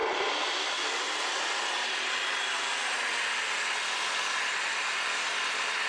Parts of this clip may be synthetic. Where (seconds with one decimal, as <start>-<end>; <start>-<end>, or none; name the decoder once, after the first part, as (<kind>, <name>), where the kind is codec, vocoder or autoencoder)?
0.0-1.0 (vocoder, BigVGAN v2)